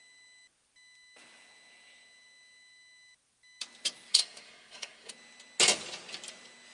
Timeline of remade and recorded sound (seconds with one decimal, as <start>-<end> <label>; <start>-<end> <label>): 0.0-4.1 recorded; 4.1-5.1 remade; 5.1-6.7 recorded